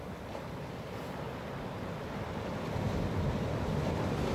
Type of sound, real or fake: real